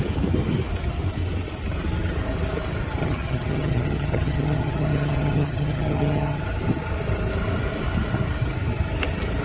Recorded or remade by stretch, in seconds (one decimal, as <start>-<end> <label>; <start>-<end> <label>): 0.0-3.0 recorded; 3.0-6.4 remade; 6.4-9.4 recorded

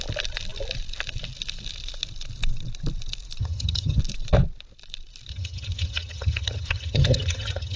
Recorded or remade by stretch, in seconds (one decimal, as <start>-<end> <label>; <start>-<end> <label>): 0.0-3.4 recorded; 3.4-4.0 remade; 4.0-5.3 recorded; 5.3-7.8 remade

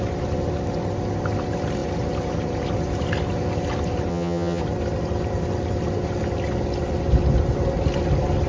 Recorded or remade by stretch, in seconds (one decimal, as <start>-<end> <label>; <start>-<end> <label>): 0.0-4.1 recorded; 4.1-4.6 remade; 4.6-8.5 recorded